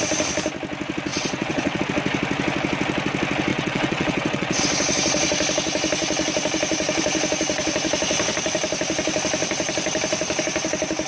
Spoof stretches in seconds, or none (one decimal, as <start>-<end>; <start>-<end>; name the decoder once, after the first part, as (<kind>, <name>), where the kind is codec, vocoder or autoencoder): 1.1-1.8 (vocoder, WaveNeXt); 3.5-4.6